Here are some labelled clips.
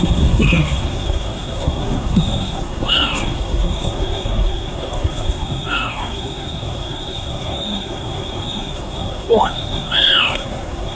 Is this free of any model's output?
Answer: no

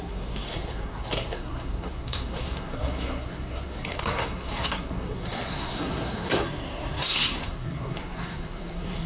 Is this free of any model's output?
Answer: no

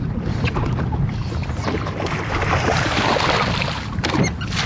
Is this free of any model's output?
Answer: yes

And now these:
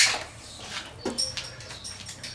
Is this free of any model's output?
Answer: yes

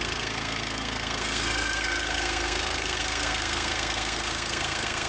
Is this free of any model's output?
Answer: no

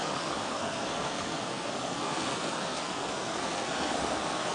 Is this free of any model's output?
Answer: no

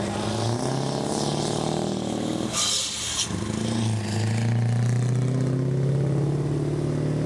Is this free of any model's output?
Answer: yes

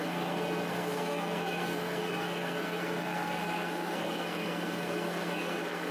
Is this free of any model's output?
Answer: no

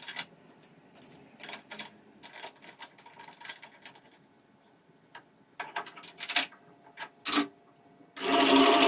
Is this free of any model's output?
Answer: yes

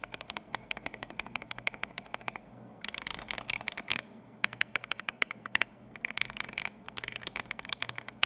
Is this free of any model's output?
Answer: no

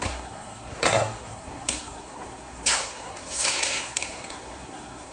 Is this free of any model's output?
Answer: no